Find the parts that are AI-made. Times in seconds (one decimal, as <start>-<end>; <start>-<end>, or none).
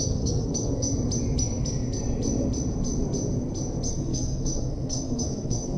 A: 0.0-0.9; 3.9-5.8